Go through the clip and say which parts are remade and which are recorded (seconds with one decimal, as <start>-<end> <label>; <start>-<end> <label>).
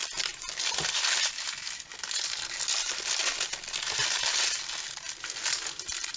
0.0-6.2 recorded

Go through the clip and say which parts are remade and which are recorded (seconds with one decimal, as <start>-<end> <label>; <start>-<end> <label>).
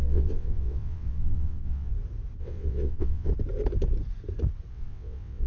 0.0-1.9 remade; 1.9-2.4 recorded; 2.4-3.3 remade; 3.3-4.7 recorded; 4.7-5.5 remade